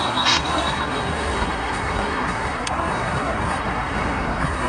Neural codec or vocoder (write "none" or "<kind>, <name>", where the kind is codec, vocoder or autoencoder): codec, SNAC